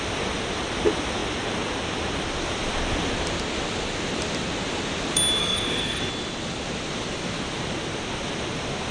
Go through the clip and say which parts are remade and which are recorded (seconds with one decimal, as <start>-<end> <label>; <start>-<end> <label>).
0.0-5.4 recorded; 5.4-6.0 remade; 6.0-8.9 recorded